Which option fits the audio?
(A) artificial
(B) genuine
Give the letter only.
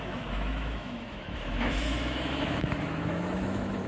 A